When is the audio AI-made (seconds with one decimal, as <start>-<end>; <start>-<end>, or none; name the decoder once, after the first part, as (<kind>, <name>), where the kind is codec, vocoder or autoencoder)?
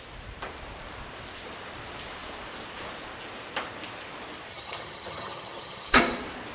4.5-6.0 (vocoder, HiFi-GAN)